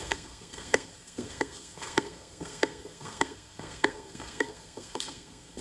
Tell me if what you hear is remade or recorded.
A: remade